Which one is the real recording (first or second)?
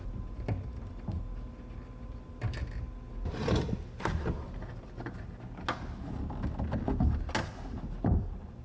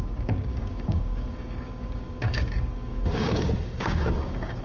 first